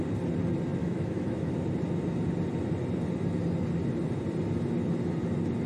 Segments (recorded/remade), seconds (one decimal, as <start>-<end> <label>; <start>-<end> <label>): 0.0-0.8 recorded; 0.8-1.5 remade; 1.5-5.7 recorded